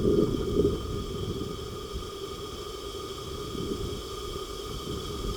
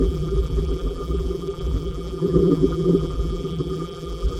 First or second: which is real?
first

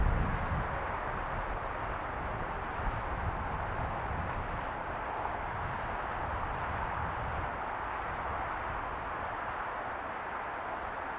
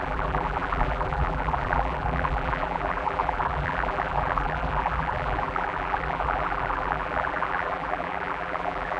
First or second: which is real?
first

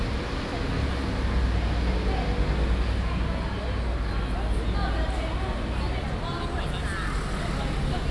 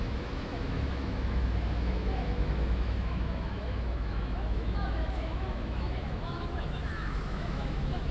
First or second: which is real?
first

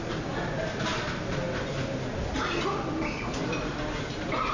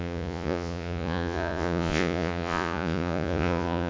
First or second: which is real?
first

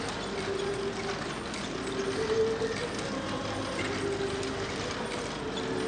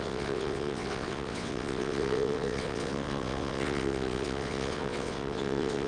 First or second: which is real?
first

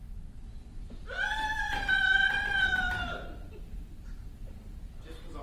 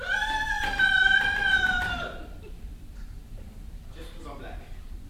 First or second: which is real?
first